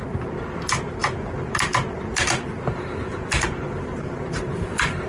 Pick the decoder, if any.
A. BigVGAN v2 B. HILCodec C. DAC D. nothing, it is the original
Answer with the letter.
A